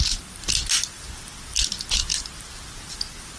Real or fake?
real